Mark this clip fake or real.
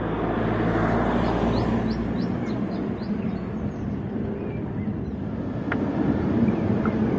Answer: real